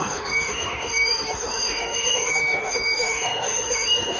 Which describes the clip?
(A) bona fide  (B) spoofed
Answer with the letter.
B